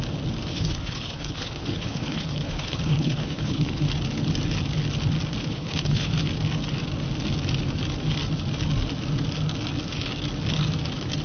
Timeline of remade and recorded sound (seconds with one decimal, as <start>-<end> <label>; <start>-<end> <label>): 0.0-0.5 recorded; 0.5-3.8 remade; 3.8-5.4 recorded; 5.4-6.1 remade; 6.1-11.2 recorded